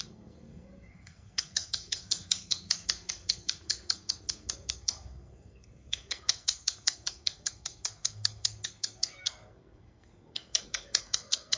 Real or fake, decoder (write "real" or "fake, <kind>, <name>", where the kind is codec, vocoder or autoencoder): fake, codec, SNAC